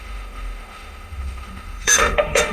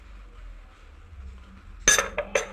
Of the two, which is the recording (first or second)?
second